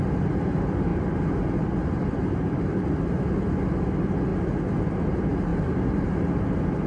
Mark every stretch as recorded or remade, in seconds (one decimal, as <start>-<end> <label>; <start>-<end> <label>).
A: 0.0-5.5 recorded; 5.5-6.1 remade; 6.1-6.9 recorded